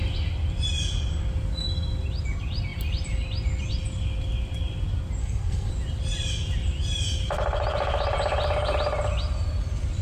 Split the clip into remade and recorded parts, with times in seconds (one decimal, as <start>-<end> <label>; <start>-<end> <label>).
0.0-5.2 recorded; 5.2-5.7 remade; 5.7-10.0 recorded